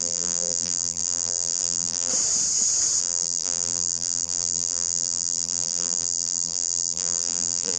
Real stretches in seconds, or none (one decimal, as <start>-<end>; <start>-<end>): 2.1-3.0